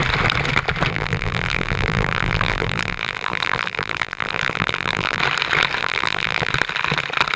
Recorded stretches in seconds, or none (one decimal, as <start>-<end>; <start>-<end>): 0.0-0.9; 5.2-5.8; 6.5-7.4